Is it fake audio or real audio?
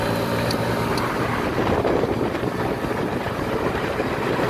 fake